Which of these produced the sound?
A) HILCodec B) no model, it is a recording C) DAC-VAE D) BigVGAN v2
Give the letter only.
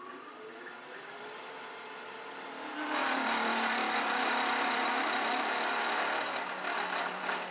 D